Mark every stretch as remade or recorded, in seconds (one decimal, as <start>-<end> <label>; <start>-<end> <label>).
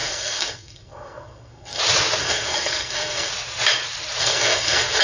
0.0-1.8 remade; 1.8-2.2 recorded; 2.2-3.3 remade; 3.3-4.2 recorded; 4.2-5.0 remade